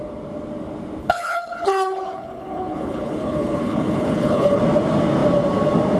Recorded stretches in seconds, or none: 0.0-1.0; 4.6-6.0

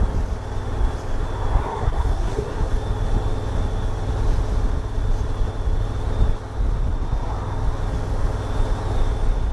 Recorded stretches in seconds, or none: 0.0-1.6; 2.7-9.5

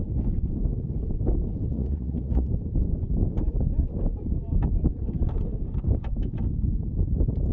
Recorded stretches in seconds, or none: 0.0-1.7; 2.5-7.5

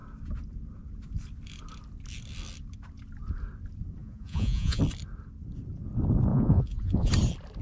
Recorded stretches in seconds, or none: 0.0-4.0; 4.8-6.3; 7.1-7.6

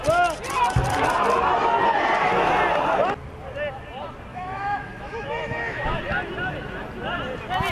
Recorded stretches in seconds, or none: 0.0-4.3; 6.0-7.7

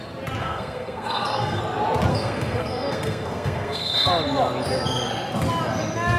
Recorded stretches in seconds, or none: 0.0-0.4; 1.6-2.1; 4.1-6.2